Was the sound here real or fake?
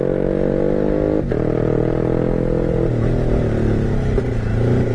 real